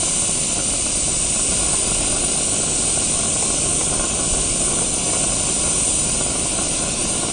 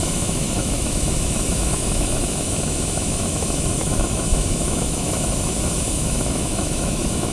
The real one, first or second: first